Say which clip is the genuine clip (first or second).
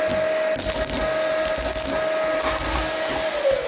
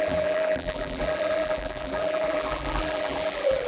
first